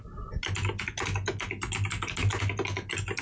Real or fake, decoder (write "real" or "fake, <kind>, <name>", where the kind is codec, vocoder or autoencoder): real